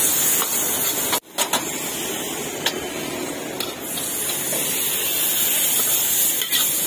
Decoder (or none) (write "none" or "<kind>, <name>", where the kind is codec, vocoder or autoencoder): none